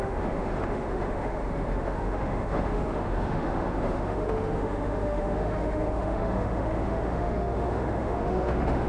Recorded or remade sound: remade